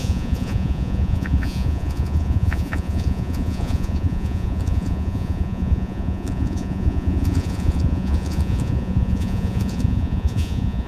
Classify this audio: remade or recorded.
remade